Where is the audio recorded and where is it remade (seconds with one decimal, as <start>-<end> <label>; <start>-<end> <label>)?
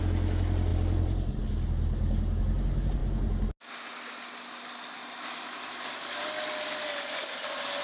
0.0-0.7 recorded; 0.7-1.3 remade; 1.3-7.8 recorded